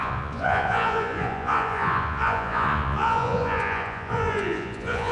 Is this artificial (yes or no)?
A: yes